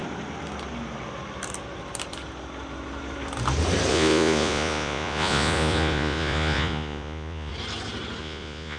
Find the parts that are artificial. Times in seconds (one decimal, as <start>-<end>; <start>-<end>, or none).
3.9-7.5; 8.2-8.8